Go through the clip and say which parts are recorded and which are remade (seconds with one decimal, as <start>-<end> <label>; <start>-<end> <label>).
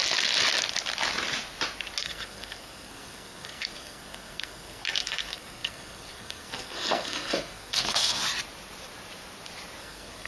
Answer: 0.0-2.0 recorded; 2.0-8.2 remade; 8.2-9.8 recorded; 9.8-10.3 remade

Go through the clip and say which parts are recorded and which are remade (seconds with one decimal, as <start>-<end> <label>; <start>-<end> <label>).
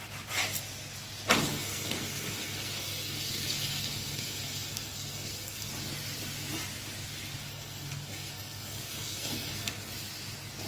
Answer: 0.0-1.5 recorded; 1.5-5.7 remade; 5.7-7.5 recorded; 7.5-9.9 remade; 9.9-10.7 recorded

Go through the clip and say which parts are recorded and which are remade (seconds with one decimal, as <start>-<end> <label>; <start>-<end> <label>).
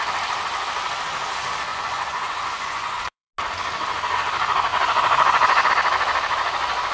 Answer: 0.0-1.7 recorded; 1.7-3.3 remade; 3.3-4.7 recorded; 4.7-5.7 remade; 5.7-6.9 recorded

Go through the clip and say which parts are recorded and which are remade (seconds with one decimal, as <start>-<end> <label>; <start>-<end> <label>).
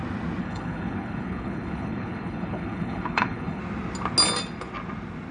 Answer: 0.0-0.4 recorded; 0.4-3.6 remade; 3.6-5.3 recorded